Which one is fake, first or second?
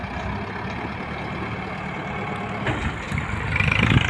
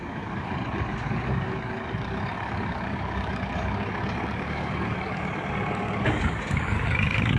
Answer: second